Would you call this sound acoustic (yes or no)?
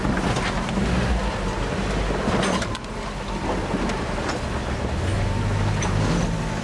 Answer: yes